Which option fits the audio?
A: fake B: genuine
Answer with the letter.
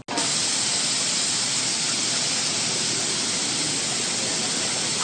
B